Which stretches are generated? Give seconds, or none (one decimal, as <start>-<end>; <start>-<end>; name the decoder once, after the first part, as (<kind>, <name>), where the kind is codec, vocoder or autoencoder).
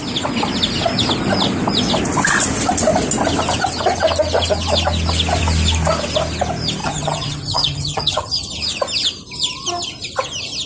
6.8-8.5 (vocoder, HiFi-GAN)